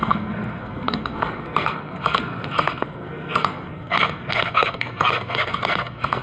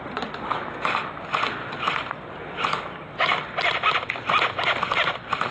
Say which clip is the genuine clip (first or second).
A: second